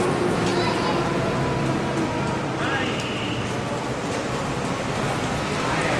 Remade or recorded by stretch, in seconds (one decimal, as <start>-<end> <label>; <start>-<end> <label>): 0.0-0.5 recorded; 0.5-2.3 remade; 2.3-6.0 recorded